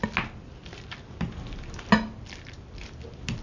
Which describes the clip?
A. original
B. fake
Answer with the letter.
A